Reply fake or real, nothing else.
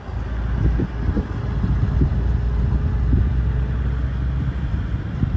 real